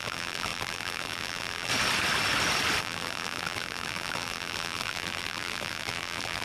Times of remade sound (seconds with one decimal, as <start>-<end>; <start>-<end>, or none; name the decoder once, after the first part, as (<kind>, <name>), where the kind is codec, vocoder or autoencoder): 0.0-1.7 (vocoder, BigVGAN v2); 2.8-6.4